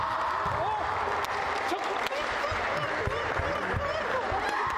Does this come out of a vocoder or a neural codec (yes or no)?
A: no